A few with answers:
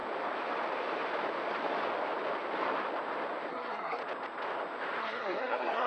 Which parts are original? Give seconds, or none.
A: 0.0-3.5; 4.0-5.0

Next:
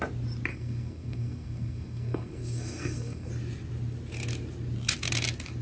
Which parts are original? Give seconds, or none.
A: 0.0-0.5; 3.3-5.6

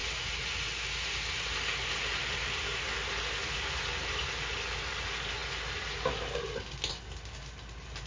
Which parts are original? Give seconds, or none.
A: 0.0-8.1